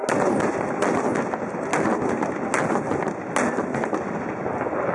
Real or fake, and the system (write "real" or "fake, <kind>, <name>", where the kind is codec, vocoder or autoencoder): real